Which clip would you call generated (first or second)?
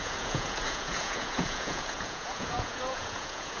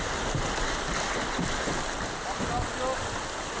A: first